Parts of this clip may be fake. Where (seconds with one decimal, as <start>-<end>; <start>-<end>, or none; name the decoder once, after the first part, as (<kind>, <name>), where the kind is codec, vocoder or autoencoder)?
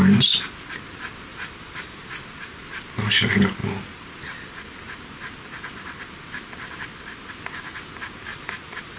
1.3-2.1 (vocoder, BigVGAN v2); 8.3-9.0